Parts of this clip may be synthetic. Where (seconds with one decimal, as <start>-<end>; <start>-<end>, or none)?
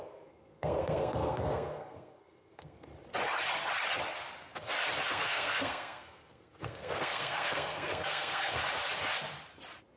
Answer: 0.0-2.9; 5.1-8.6